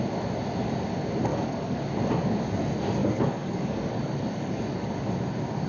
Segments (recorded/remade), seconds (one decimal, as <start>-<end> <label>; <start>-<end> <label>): 0.0-1.3 recorded; 1.3-1.8 remade; 1.8-3.0 recorded; 3.0-5.0 remade; 5.0-5.7 recorded